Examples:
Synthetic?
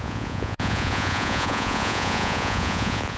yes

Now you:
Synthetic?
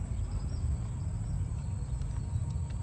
no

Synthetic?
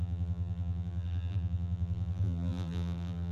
yes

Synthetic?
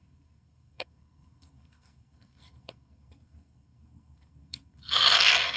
yes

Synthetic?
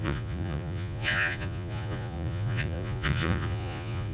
yes